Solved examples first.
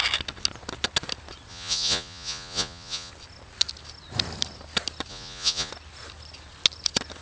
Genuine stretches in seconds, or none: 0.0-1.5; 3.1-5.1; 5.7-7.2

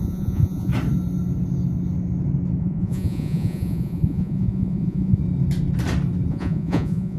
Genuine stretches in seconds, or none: 0.7-2.6; 5.2-6.3

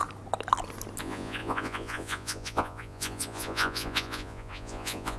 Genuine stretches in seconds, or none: 0.0-1.0

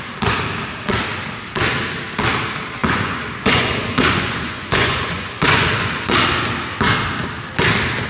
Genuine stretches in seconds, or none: 0.0-2.8; 6.2-8.1

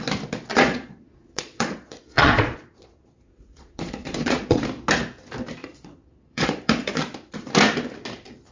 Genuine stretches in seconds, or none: 0.0-0.5; 4.6-5.6; 6.9-8.5

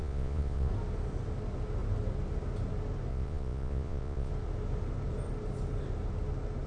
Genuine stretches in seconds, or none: 0.7-3.1; 4.3-6.7

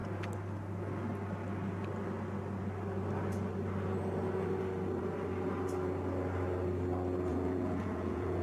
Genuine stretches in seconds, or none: 0.0-7.3

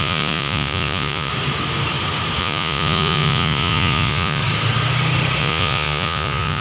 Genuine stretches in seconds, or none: 1.3-2.4; 4.4-5.4